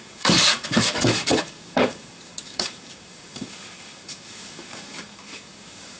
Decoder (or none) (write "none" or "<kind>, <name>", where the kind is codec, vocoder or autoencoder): codec, DAC